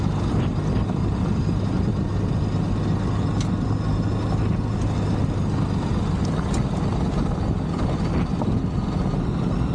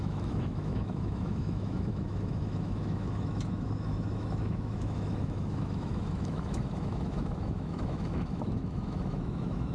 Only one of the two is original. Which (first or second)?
first